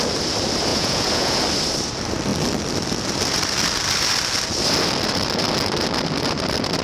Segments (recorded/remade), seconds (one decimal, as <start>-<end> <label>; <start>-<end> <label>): 0.0-0.7 recorded; 0.7-1.4 remade; 1.4-6.8 recorded